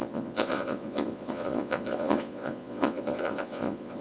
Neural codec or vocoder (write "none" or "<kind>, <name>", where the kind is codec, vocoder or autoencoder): vocoder, Vocos